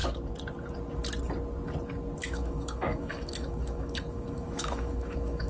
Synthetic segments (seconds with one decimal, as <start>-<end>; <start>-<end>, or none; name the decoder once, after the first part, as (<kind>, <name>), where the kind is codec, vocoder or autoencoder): 2.2-5.5 (autoencoder, DAC-VAE)